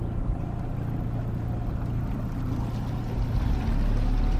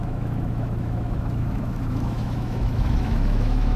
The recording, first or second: first